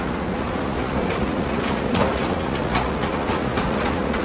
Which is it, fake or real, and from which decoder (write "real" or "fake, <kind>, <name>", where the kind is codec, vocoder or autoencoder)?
fake, vocoder, Vocos